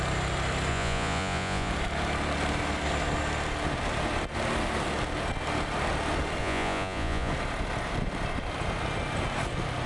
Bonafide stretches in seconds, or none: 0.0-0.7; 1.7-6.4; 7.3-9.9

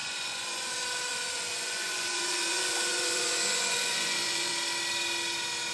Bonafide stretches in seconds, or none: 0.7-1.1; 4.5-5.7

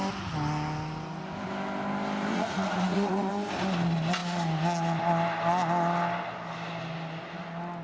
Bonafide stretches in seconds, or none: 0.0-2.3; 3.3-7.8

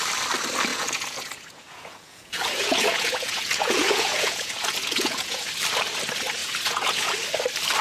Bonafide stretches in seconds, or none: 0.0-0.7; 5.4-6.4; 7.1-7.8

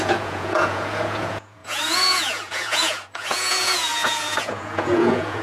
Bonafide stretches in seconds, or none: none

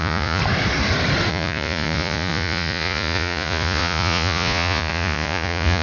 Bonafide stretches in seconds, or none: 0.4-1.3

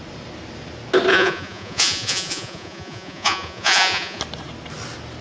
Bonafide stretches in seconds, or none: 0.0-1.1; 4.2-5.2

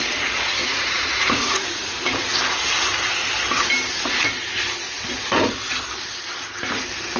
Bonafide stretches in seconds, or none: 0.0-0.6; 1.9-7.2